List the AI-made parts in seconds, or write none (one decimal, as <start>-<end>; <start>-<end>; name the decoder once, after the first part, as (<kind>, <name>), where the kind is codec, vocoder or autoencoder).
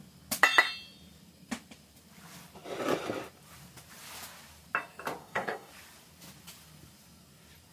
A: 5.2-5.7 (codec, DAC)